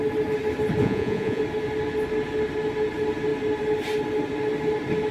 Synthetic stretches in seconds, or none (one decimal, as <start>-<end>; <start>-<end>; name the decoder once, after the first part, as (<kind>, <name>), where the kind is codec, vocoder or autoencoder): 0.8-1.4 (vocoder, Vocos)